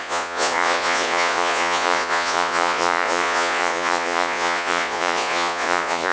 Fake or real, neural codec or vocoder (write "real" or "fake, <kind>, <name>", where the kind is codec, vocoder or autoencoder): fake, vocoder, Vocos